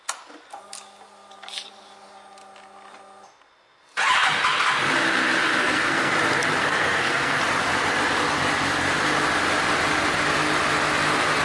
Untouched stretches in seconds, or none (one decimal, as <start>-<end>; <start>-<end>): 0.0-5.6; 6.1-6.6; 7.4-11.4